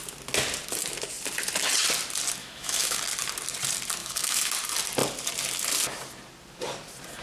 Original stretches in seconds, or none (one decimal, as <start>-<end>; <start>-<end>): 0.0-2.4; 3.0-4.0; 4.5-7.2